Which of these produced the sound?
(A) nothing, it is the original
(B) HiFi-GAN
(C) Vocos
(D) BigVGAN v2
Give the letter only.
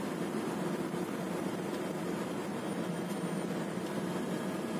A